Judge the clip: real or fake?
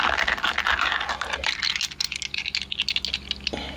real